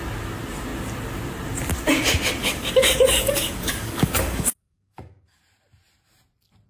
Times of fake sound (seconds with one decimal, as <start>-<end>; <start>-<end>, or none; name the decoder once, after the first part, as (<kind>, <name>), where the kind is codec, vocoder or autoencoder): 2.4-5.4 (codec, DAC)